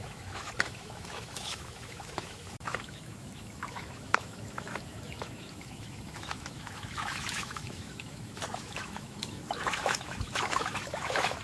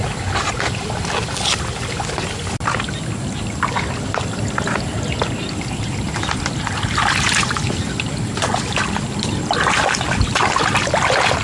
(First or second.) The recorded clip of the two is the second